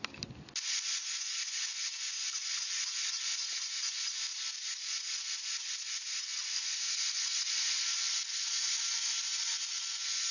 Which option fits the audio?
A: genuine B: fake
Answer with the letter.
A